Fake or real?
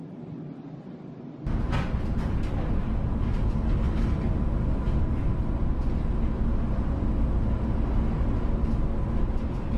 real